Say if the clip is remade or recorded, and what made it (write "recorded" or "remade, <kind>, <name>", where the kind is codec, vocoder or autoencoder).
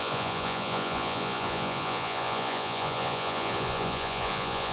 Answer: remade, vocoder, Vocos